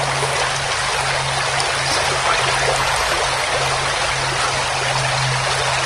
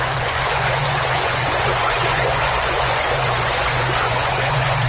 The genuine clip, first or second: first